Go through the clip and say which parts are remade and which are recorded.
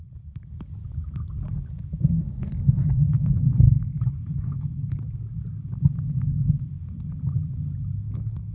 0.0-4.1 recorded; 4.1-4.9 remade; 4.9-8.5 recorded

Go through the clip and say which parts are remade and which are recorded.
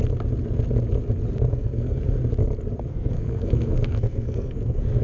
0.0-1.5 recorded; 1.5-2.0 remade; 2.0-2.9 recorded; 2.9-5.0 remade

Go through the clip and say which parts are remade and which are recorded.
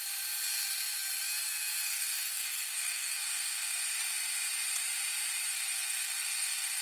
0.0-1.9 recorded; 1.9-3.8 remade; 3.8-5.5 recorded; 5.5-6.8 remade